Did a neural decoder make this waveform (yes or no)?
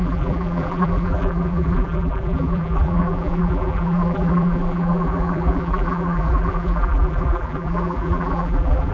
yes